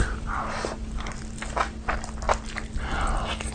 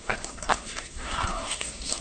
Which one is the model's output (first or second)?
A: second